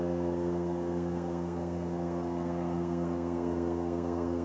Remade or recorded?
remade